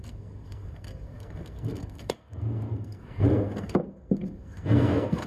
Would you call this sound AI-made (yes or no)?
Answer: yes